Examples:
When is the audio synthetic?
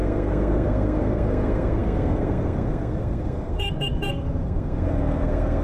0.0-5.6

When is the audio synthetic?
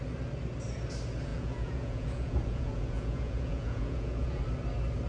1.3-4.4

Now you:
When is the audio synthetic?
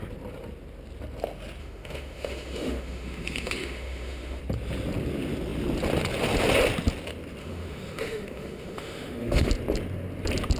1.6-4.4; 7.4-9.5